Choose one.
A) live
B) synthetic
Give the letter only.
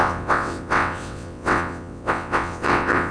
B